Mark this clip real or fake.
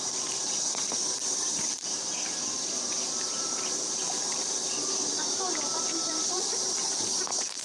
fake